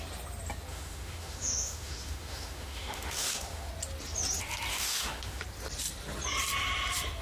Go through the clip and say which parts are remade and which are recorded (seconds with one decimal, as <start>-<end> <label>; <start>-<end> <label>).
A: 0.0-0.7 recorded; 0.7-3.7 remade; 3.7-4.7 recorded; 4.7-5.4 remade; 5.4-7.2 recorded